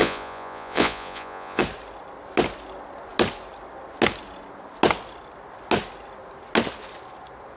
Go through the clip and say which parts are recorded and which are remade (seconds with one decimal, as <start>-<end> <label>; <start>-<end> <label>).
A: 0.0-1.6 remade; 1.6-7.6 recorded